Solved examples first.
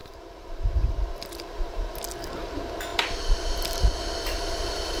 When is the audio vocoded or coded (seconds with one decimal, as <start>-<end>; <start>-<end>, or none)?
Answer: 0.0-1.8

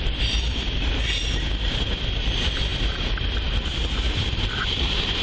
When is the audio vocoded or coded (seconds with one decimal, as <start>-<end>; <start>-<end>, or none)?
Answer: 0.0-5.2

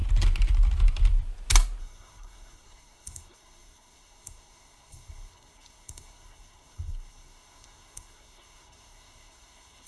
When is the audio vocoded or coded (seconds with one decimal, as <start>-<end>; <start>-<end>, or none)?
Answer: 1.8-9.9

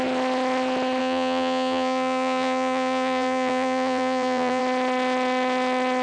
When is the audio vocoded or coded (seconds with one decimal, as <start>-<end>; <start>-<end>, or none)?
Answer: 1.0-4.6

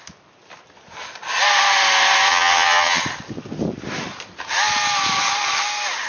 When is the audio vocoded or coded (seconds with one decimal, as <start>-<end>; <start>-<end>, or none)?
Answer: 2.3-3.0

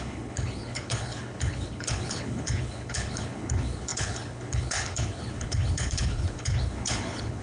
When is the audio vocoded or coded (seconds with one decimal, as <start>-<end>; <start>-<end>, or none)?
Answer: 0.0-7.4

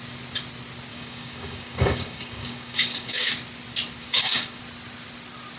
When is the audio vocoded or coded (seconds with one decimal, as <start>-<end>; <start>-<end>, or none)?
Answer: 0.9-3.3; 4.0-4.6

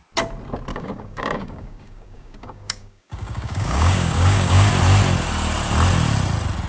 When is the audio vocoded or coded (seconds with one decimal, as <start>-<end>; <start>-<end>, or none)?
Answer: 0.7-4.7